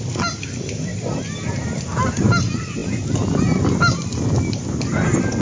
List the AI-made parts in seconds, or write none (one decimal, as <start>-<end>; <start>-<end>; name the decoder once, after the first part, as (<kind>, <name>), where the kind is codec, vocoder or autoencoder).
none